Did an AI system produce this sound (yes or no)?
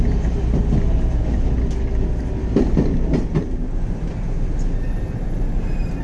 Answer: no